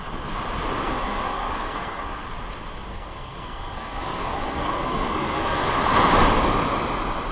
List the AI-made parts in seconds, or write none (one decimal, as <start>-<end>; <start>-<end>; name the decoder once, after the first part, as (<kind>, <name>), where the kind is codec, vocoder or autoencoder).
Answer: 0.8-2.2 (codec, SNAC); 2.9-5.6